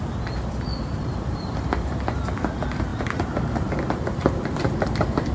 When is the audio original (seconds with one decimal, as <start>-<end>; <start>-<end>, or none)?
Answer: 0.0-1.3; 1.9-2.9